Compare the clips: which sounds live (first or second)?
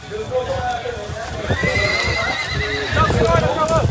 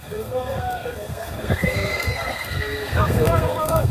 first